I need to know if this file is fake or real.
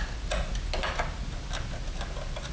real